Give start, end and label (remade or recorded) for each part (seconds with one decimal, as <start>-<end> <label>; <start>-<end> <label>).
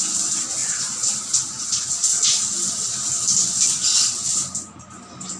0.0-5.4 recorded